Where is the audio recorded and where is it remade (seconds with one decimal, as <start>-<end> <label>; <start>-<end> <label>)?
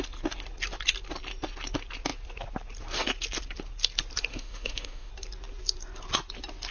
0.0-4.3 recorded; 4.3-5.1 remade; 5.1-6.7 recorded